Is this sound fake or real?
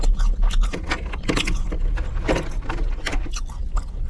real